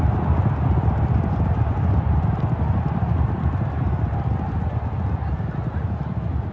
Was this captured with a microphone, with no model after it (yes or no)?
yes